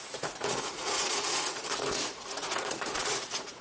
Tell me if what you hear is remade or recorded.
remade